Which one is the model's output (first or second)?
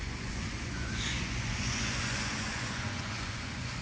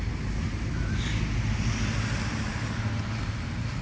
first